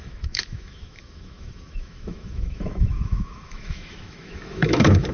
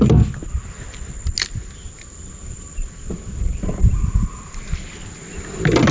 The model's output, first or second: first